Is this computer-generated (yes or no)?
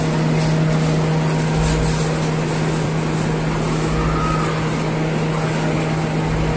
no